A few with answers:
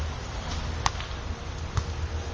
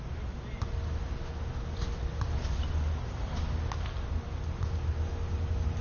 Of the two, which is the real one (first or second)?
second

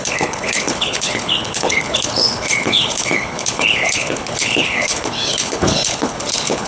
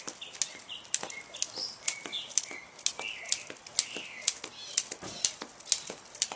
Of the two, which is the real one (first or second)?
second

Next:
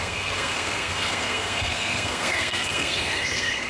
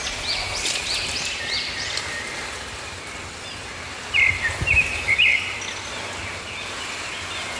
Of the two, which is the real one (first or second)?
second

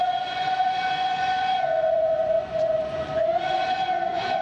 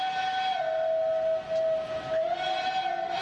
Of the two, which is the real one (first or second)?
second